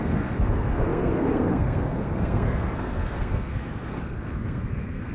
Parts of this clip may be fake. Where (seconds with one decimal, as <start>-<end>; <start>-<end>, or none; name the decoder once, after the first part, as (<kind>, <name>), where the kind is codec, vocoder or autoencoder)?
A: 0.0-5.1 (codec, SNAC)